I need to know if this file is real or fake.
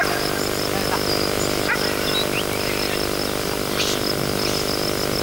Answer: real